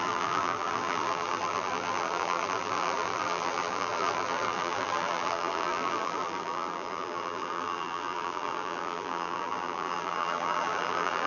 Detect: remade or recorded remade